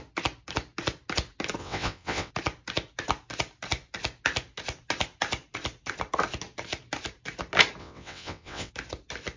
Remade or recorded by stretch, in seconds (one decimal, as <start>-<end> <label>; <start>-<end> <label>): 0.0-1.6 recorded; 1.6-2.3 remade; 2.3-7.8 recorded; 7.8-8.7 remade; 8.7-9.4 recorded